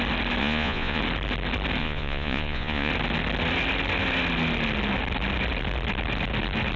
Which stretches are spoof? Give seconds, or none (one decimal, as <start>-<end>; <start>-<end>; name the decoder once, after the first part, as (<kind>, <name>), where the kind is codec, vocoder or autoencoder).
0.4-1.0 (vocoder, Vocos); 1.8-2.9